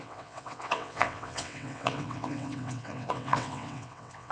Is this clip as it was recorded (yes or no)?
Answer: no